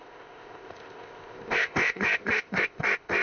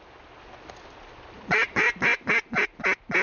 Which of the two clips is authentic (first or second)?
second